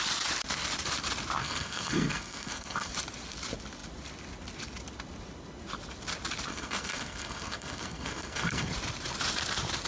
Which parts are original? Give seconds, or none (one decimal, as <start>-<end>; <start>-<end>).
0.0-1.4; 2.9-6.5; 8.7-9.9